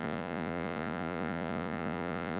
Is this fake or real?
fake